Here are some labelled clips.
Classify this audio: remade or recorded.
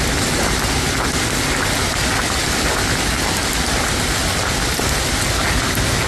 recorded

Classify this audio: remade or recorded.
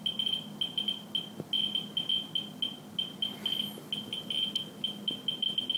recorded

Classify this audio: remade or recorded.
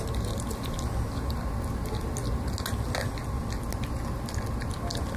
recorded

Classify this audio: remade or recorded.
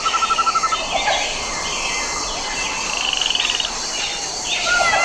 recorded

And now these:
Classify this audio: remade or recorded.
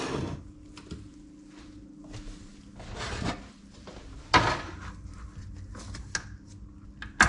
recorded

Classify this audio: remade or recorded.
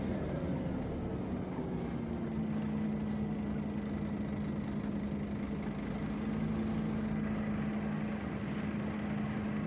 recorded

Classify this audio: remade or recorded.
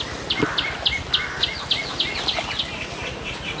recorded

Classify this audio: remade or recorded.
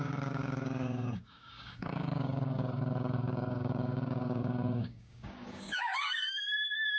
remade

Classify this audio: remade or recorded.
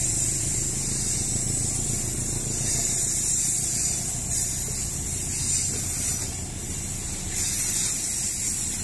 recorded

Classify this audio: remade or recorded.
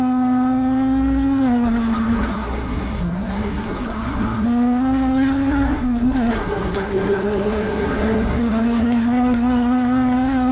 remade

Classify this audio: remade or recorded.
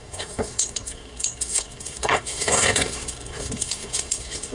remade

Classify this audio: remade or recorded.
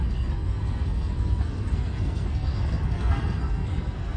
remade